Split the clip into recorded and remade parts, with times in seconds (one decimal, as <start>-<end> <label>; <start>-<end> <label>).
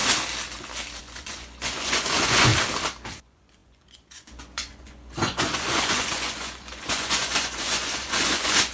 0.0-1.0 recorded; 1.0-2.5 remade; 2.5-3.2 recorded; 3.2-8.7 remade